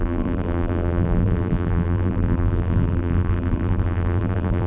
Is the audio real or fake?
fake